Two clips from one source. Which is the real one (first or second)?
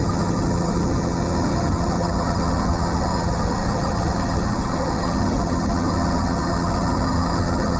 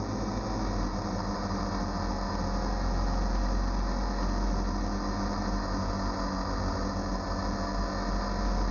second